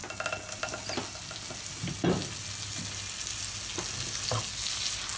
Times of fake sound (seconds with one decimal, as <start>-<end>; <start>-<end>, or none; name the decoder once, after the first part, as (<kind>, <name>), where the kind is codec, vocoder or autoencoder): none